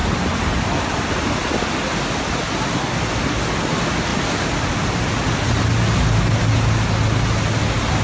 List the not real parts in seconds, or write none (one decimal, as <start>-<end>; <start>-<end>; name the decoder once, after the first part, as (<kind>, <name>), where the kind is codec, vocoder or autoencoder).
4.1-4.7 (vocoder, BigVGAN v2)